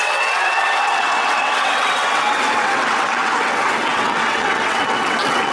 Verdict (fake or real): fake